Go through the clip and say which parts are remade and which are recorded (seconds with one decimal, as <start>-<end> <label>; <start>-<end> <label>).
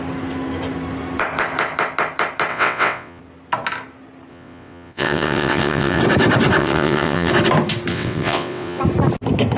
0.0-2.5 recorded; 2.5-3.2 remade; 3.2-4.3 recorded; 4.3-6.0 remade; 6.0-6.6 recorded; 6.6-7.3 remade; 7.3-7.9 recorded; 7.9-8.8 remade; 8.8-9.6 recorded